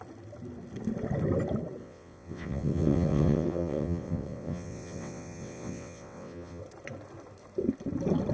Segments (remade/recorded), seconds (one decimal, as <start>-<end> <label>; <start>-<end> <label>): 0.0-1.8 recorded; 1.8-6.6 remade; 6.6-8.3 recorded